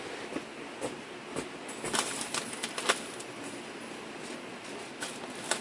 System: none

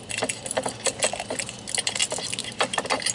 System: none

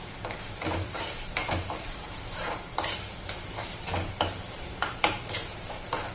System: vocoder, BigVGAN v2